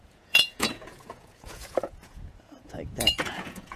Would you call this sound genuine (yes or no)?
no